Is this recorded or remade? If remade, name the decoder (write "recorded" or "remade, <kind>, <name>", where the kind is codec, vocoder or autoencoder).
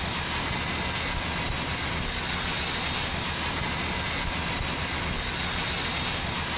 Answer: recorded